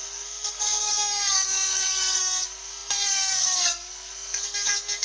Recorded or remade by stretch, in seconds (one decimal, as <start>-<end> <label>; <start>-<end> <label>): 0.0-5.0 remade